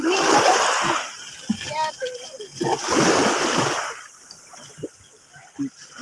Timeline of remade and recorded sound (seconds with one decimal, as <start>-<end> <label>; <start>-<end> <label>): 0.0-6.0 recorded